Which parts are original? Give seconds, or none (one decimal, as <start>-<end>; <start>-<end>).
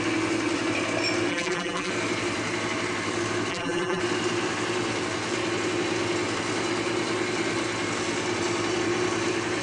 0.0-1.3; 1.9-3.5; 4.0-9.6